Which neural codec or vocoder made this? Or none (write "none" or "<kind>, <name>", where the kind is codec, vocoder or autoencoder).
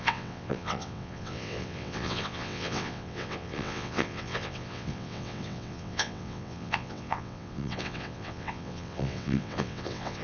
vocoder, WaveNeXt